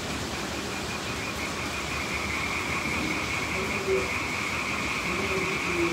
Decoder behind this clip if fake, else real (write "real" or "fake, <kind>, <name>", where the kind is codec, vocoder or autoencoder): real